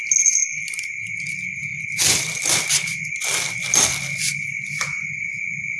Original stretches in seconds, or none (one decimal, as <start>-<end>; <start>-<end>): 0.0-5.8